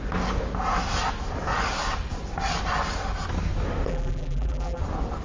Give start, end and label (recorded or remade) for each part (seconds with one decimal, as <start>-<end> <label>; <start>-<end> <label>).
0.0-3.9 recorded; 3.9-4.8 remade; 4.8-5.2 recorded

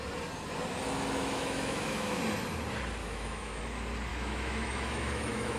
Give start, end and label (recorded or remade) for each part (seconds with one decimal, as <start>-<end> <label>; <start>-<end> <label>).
0.0-1.2 recorded; 1.2-2.2 remade; 2.2-3.0 recorded; 3.0-3.6 remade; 3.6-4.1 recorded; 4.1-5.6 remade

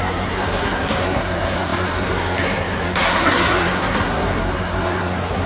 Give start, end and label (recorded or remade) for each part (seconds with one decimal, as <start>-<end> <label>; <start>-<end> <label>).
0.0-5.5 remade

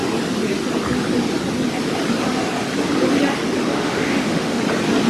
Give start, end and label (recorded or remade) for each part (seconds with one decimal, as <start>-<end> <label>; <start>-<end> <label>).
0.0-3.7 recorded; 3.7-4.6 remade; 4.6-5.1 recorded

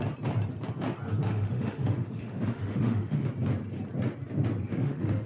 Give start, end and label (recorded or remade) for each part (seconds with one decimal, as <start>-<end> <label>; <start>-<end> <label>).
0.0-1.2 recorded; 1.2-3.3 remade; 3.3-4.7 recorded; 4.7-5.3 remade

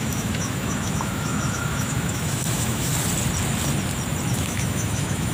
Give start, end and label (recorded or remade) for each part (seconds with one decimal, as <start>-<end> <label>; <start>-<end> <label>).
0.0-2.9 remade; 2.9-4.3 recorded; 4.3-5.3 remade

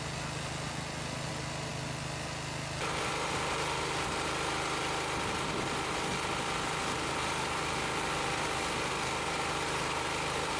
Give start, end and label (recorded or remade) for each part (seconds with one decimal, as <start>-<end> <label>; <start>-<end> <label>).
0.0-10.6 recorded